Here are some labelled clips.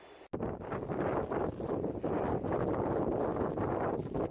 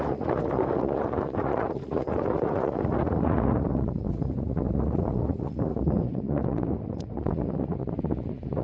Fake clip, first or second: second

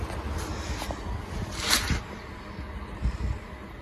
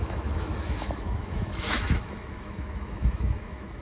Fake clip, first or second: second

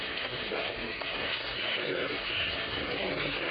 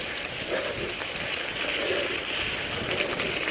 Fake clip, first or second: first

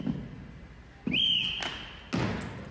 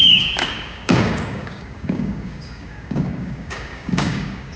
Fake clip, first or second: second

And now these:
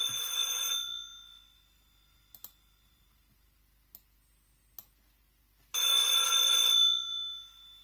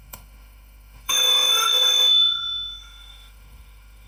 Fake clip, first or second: second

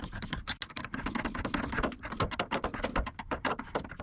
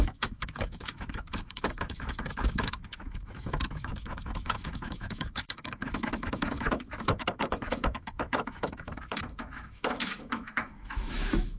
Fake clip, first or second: second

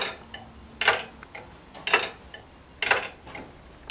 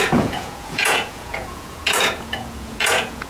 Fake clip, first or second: second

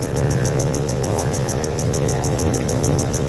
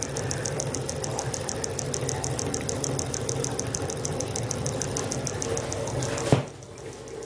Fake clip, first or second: first